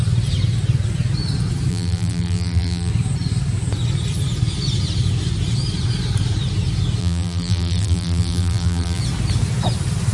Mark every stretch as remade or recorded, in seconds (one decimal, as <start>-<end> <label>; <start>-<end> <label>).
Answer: 0.0-1.7 recorded; 1.7-2.9 remade; 2.9-7.0 recorded; 7.0-9.0 remade; 9.0-10.1 recorded